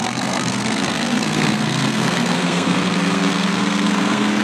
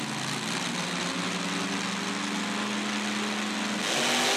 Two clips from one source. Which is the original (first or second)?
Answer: second